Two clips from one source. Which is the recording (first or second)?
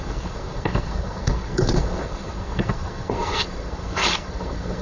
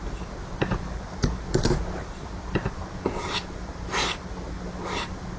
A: second